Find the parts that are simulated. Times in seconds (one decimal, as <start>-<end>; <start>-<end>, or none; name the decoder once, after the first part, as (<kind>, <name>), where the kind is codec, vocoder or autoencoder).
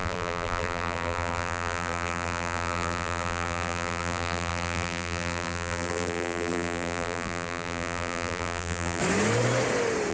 0.0-9.0 (vocoder, BigVGAN v2)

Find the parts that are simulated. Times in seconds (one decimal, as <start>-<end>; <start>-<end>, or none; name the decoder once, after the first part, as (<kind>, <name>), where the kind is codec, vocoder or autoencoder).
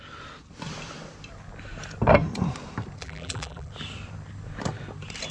3.0-3.7 (vocoder, BigVGAN v2)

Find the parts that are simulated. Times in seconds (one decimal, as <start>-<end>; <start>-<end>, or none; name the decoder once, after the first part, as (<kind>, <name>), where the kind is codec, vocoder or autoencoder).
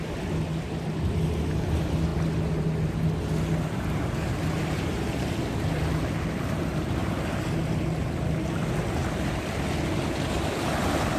0.0-2.1 (vocoder, BigVGAN v2); 3.9-7.0; 8.0-11.2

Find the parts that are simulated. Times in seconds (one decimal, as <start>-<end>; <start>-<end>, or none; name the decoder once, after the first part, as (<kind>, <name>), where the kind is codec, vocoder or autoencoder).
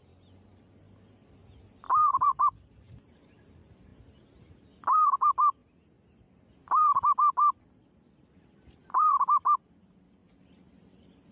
0.0-1.4 (vocoder, BigVGAN v2); 2.1-3.9; 8.7-11.3